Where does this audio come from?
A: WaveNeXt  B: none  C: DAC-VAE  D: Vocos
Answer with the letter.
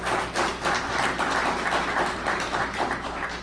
B